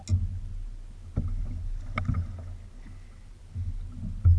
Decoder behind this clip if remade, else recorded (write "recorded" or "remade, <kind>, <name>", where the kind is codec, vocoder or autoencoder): recorded